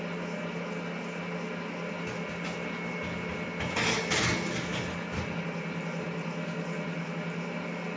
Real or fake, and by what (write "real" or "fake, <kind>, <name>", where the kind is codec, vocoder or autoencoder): real